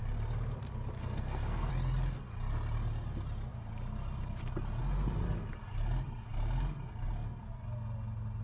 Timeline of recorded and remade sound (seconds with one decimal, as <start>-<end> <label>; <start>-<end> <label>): 0.0-1.0 recorded; 1.0-1.7 remade; 1.7-8.4 recorded